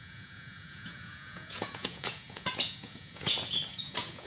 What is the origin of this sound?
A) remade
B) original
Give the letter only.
A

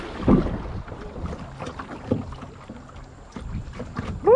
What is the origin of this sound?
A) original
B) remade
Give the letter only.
A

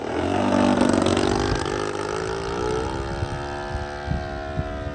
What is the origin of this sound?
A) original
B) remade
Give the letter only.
A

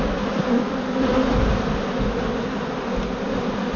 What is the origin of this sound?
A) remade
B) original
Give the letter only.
B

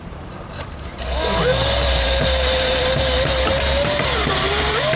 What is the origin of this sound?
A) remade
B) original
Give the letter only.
A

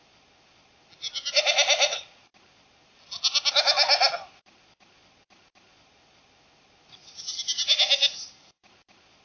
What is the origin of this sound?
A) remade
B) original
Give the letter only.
B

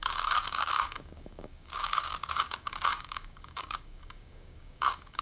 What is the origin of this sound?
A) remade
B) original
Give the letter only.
A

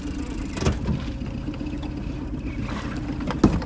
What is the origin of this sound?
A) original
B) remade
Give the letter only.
A